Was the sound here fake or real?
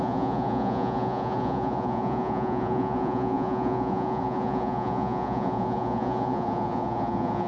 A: fake